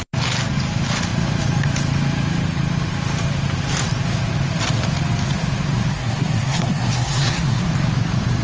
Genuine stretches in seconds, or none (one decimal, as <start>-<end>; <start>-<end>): 0.0-5.9; 7.7-8.4